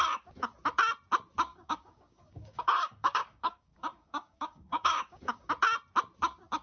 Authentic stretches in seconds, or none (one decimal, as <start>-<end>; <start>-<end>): 0.0-1.5; 5.5-6.6